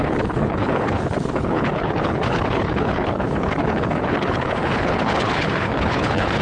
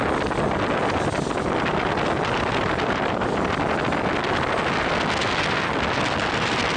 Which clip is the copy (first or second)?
first